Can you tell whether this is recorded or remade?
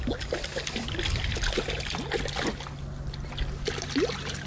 recorded